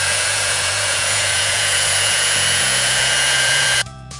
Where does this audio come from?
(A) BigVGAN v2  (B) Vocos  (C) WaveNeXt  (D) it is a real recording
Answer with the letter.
B